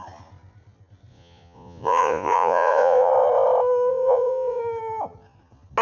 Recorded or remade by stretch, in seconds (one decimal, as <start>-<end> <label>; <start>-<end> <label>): 0.0-1.1 recorded; 1.1-3.1 remade; 3.1-3.9 recorded; 3.9-4.6 remade; 4.6-5.8 recorded